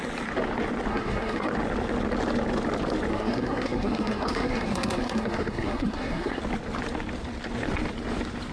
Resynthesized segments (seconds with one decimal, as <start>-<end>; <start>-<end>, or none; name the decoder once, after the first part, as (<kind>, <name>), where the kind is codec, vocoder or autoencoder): 0.9-1.5 (codec, SNAC); 3.1-6.4